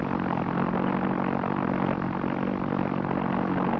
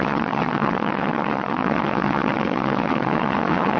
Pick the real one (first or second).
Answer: first